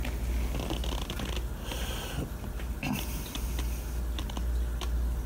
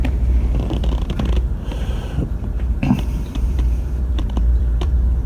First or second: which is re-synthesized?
second